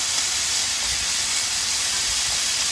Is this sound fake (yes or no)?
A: no